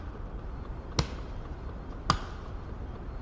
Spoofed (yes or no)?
no